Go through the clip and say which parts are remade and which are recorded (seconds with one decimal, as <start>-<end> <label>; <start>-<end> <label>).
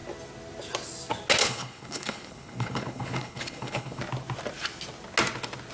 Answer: 0.0-1.4 recorded; 1.4-4.0 remade; 4.0-5.7 recorded